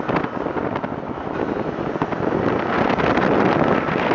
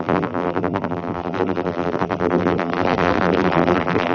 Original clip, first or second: first